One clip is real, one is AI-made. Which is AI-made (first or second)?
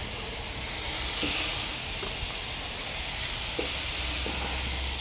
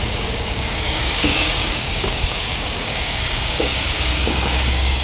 second